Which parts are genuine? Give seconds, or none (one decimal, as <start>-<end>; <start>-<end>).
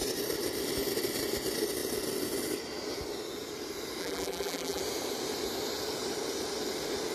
0.0-4.0; 4.8-7.1